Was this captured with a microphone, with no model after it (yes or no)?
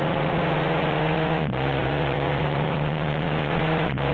no